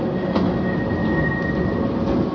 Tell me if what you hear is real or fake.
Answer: real